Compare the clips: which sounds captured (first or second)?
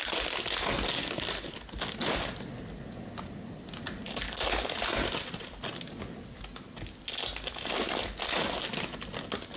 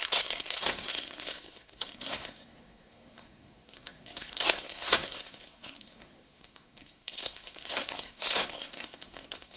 first